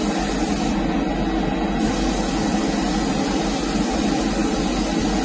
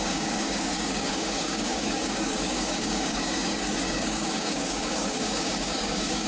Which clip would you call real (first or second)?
first